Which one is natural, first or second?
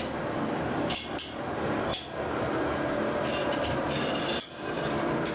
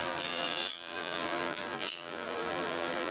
first